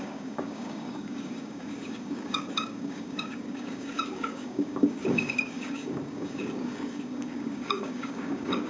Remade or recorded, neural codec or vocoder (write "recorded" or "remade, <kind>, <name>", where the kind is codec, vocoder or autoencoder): remade, codec, DAC